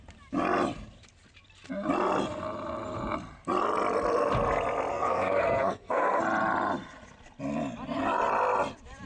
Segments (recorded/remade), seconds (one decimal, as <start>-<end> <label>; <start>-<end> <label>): 0.0-4.9 recorded; 4.9-6.2 remade; 6.2-9.1 recorded